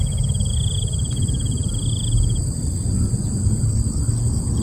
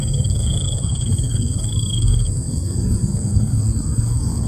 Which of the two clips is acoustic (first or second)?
first